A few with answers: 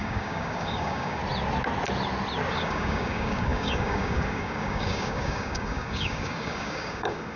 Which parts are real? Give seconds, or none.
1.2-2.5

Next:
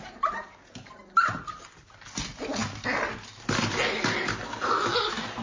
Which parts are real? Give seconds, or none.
0.0-5.4

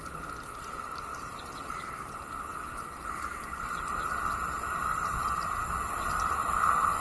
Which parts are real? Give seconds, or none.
0.0-1.1; 2.1-7.0

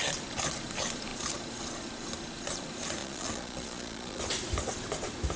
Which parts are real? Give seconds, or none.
0.0-3.0; 4.2-5.4